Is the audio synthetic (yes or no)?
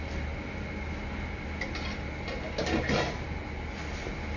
no